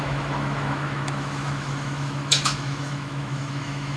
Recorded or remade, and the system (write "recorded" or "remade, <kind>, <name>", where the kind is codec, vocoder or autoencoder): remade, autoencoder, DAC-VAE